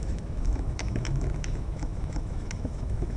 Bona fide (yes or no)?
no